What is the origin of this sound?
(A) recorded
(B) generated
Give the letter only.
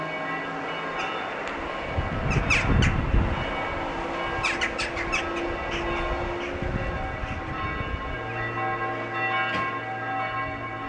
A